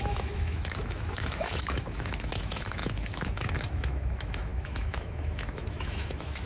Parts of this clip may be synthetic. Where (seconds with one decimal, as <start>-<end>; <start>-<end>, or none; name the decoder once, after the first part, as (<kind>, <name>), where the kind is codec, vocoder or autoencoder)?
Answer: 0.0-6.5 (autoencoder, DAC-VAE)